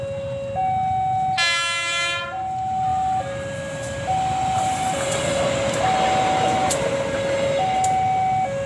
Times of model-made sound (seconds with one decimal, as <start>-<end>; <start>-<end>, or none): none